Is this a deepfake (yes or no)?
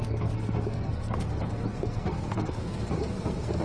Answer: yes